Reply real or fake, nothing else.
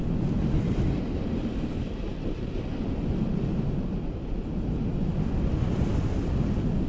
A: real